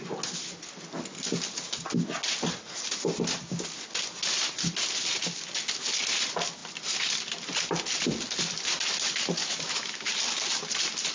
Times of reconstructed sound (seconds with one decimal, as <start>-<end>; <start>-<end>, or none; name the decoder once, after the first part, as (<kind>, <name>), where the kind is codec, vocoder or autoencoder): 9.4-10.1 (autoencoder, DAC-VAE)